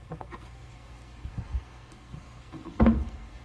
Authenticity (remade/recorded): remade